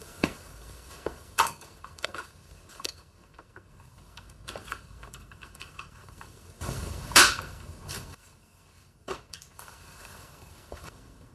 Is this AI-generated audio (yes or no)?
yes